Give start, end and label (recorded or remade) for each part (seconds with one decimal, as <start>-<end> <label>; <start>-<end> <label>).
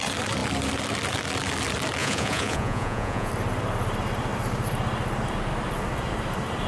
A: 0.0-2.0 recorded; 2.0-3.3 remade; 3.3-6.7 recorded